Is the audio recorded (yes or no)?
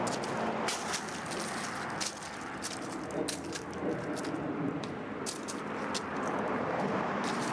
yes